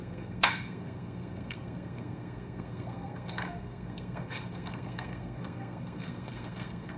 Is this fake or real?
fake